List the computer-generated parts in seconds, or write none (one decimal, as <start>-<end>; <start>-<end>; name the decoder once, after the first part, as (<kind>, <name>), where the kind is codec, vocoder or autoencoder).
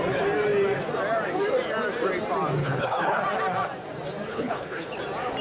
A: 2.6-3.2 (codec, HILCodec); 4.3-4.9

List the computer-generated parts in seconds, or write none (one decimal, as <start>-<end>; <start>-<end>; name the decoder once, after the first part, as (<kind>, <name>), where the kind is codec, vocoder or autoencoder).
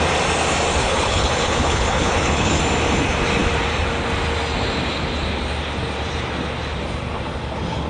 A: 0.8-2.6 (codec, HILCodec)